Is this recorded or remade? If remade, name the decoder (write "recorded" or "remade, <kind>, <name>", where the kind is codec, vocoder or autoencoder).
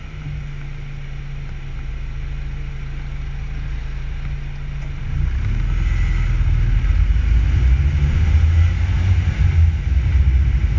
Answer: recorded